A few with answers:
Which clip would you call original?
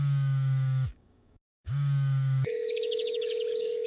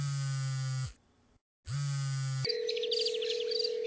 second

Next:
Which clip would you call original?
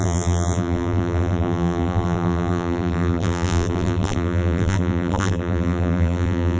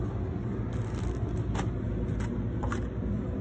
second